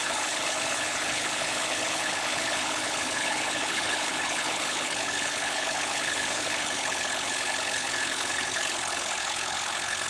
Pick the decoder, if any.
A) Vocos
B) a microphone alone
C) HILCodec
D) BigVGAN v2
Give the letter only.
C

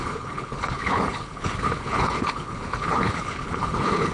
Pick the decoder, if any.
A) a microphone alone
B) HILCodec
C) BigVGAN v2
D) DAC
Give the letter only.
B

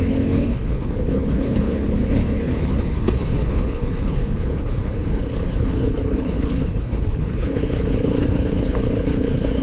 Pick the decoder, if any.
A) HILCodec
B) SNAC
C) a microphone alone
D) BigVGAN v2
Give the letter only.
A